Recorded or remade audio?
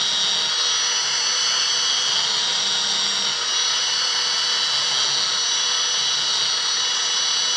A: recorded